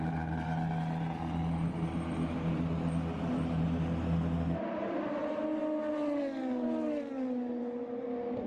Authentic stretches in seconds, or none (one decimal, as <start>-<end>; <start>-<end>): 0.0-8.5